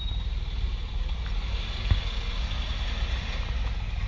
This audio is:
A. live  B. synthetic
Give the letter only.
A